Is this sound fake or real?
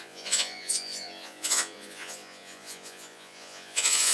fake